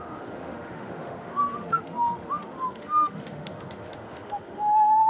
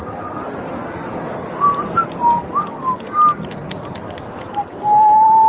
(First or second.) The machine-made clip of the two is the first